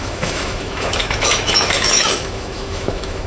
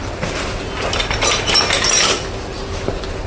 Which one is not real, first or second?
first